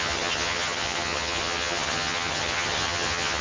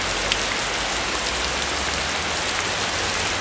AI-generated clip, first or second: first